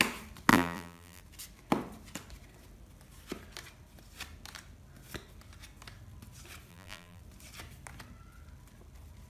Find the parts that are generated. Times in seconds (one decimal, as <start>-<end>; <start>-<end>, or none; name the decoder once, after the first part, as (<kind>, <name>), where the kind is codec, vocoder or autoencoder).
0.5-1.2 (vocoder, BigVGAN v2); 6.7-7.2